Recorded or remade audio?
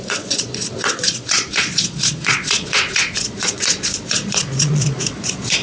remade